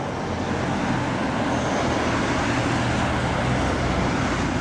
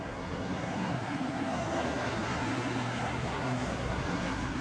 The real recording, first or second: first